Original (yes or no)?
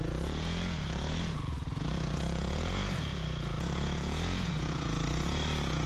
no